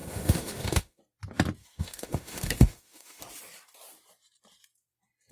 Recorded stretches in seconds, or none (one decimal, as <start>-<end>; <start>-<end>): 1.0-1.6; 3.2-5.3